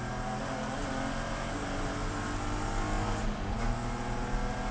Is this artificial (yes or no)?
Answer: no